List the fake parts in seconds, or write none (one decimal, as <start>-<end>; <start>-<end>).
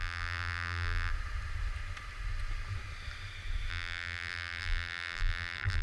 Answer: 0.0-1.1; 3.7-5.8